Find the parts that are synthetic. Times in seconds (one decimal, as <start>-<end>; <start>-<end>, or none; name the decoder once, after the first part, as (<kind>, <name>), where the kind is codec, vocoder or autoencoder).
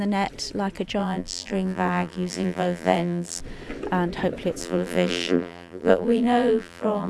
1.0-3.4 (vocoder, BigVGAN v2); 4.6-7.1